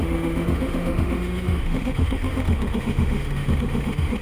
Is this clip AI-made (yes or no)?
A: yes